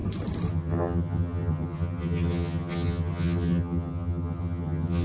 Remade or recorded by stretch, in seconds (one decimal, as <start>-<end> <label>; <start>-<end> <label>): 0.0-0.5 recorded; 0.5-5.0 remade